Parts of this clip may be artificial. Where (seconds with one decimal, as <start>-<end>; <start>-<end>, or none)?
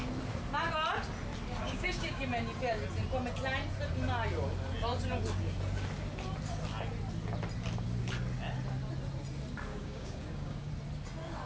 1.6-2.2; 9.7-10.7